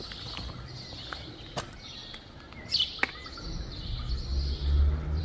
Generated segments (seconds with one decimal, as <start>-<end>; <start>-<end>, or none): none